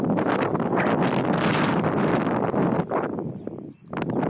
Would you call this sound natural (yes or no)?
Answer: yes